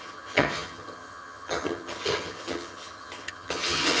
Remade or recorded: remade